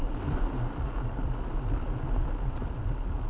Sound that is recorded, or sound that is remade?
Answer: recorded